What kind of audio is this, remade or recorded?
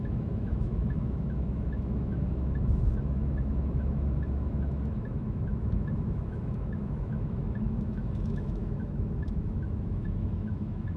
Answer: remade